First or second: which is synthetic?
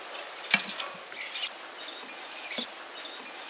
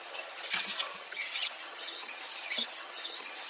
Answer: second